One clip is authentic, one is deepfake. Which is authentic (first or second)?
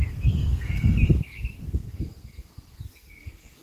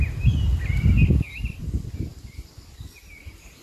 second